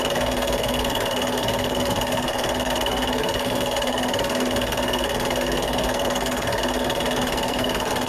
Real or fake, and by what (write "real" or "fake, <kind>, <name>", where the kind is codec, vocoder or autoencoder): fake, codec, SNAC